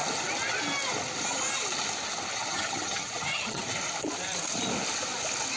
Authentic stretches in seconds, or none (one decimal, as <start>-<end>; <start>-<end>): 0.0-2.3; 3.6-5.6